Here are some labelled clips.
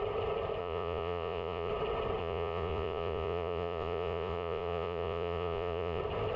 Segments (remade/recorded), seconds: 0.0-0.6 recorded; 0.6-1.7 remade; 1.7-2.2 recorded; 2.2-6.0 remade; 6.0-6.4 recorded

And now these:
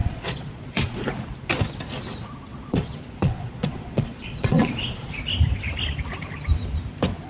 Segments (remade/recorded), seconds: 0.0-1.0 remade; 1.0-2.5 recorded; 2.5-5.1 remade; 5.1-7.3 recorded

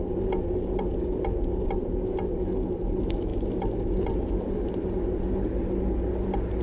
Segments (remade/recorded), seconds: 0.0-6.6 recorded

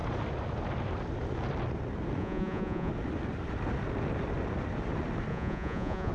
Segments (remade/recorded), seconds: 0.0-2.2 recorded; 2.2-2.9 remade; 2.9-5.3 recorded; 5.3-6.1 remade

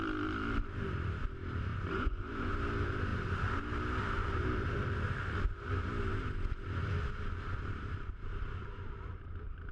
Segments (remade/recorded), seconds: 0.0-1.7 recorded; 1.7-2.5 remade; 2.5-9.7 recorded